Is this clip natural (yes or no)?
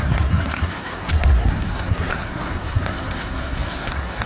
no